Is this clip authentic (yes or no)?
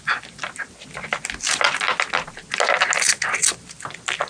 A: yes